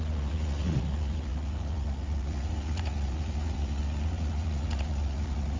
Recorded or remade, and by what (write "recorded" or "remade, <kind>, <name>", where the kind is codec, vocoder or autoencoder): remade, vocoder, Vocos